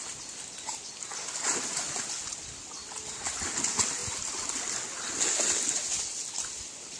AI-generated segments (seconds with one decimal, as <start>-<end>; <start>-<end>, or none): none